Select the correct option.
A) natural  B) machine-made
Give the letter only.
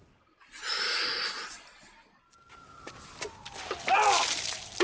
A